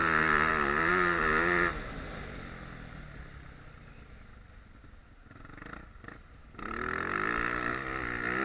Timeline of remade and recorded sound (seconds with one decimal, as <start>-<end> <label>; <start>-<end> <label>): 0.0-8.4 recorded